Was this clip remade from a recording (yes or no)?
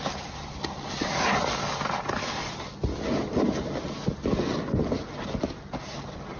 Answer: no